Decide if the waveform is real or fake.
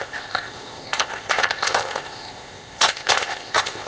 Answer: fake